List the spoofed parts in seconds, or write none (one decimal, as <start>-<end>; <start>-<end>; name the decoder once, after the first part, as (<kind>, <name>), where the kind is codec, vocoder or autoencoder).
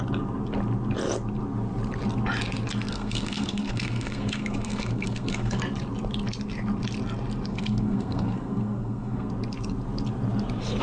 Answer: 2.9-5.6 (codec, SNAC); 7.5-9.3